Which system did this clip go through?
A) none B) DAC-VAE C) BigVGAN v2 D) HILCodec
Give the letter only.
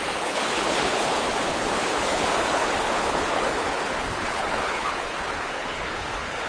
D